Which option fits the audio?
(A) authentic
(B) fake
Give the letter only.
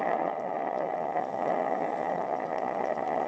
B